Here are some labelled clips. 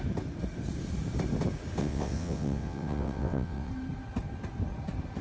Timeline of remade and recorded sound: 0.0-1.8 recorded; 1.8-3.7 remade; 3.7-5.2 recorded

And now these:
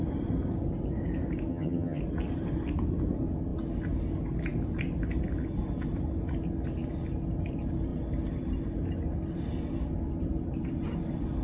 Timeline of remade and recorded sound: 0.0-1.5 recorded; 1.5-2.0 remade; 2.0-11.4 recorded

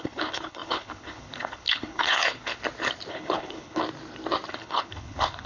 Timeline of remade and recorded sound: 0.0-2.6 remade; 2.6-3.1 recorded; 3.1-3.8 remade; 3.8-4.5 recorded; 4.5-5.5 remade

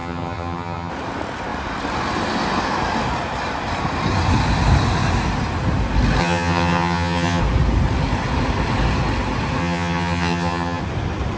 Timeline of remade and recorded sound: 0.0-0.9 remade; 0.9-6.2 recorded; 6.2-7.4 remade; 7.4-9.6 recorded; 9.6-10.8 remade; 10.8-11.4 recorded

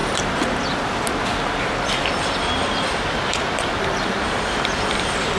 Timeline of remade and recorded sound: 0.0-3.1 recorded; 3.1-5.4 remade